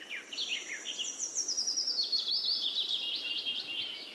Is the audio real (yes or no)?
yes